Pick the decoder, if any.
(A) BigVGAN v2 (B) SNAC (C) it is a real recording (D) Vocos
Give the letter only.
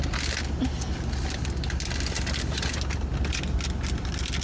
C